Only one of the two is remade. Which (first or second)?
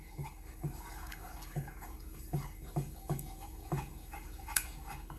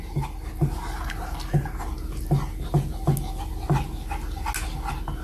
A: first